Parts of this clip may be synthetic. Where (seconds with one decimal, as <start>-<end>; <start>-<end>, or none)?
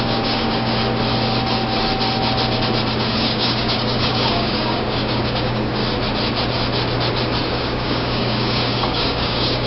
0.0-0.8; 3.0-5.8; 7.5-9.7